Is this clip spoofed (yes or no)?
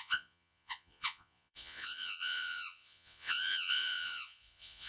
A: yes